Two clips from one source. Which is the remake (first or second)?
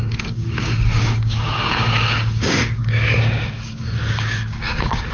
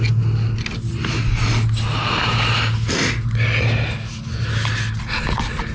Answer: first